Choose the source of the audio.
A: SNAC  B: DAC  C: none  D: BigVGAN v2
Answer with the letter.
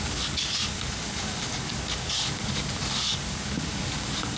B